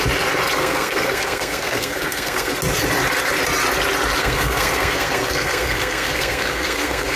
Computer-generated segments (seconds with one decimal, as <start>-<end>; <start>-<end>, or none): 0.6-2.5; 4.2-7.2